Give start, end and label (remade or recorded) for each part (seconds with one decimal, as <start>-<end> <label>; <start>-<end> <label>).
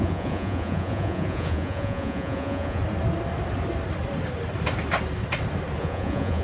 0.0-2.8 remade; 2.8-5.8 recorded; 5.8-6.4 remade